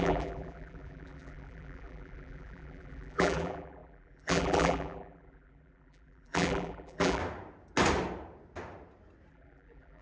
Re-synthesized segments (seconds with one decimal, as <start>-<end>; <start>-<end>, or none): 0.0-7.2; 9.3-10.0